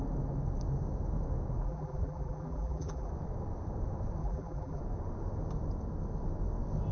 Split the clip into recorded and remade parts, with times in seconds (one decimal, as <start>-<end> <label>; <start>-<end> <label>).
0.0-1.6 recorded; 1.6-3.1 remade; 3.1-4.2 recorded; 4.2-4.8 remade; 4.8-6.9 recorded